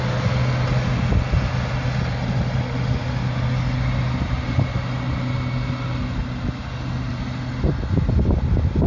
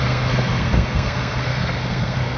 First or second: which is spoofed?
second